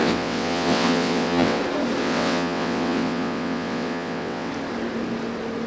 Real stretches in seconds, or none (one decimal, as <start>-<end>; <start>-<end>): 1.6-2.0; 4.5-5.7